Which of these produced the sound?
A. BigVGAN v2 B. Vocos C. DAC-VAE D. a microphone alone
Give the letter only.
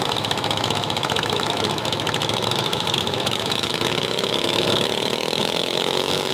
C